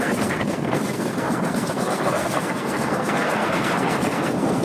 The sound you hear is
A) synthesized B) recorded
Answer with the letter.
A